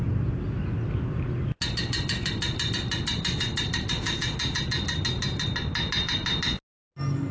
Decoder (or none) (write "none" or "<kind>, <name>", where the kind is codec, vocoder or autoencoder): none